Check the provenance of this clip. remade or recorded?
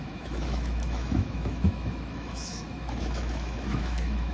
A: remade